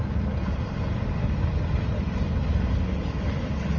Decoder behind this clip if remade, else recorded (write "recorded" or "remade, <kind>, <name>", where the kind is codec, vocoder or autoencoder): recorded